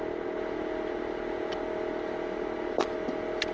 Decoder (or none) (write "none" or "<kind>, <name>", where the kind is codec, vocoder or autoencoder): none